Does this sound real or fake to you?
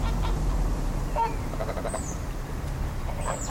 fake